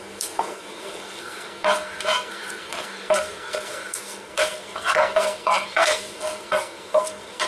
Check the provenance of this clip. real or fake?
fake